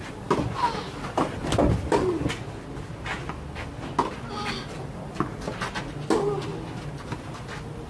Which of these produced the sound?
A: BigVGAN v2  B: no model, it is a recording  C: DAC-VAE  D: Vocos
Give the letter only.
B